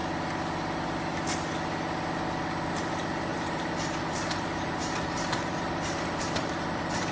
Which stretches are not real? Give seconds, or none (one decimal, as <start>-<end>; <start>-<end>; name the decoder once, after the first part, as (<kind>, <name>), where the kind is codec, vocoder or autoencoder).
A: 3.3-7.1 (vocoder, BigVGAN v2)